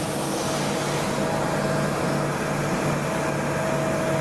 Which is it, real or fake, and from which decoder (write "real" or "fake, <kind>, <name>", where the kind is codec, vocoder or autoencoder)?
real